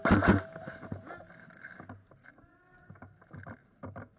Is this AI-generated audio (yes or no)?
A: no